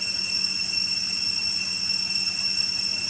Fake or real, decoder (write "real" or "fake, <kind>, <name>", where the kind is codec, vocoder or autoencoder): real